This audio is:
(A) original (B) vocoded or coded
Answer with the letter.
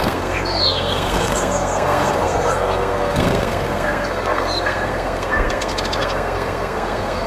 B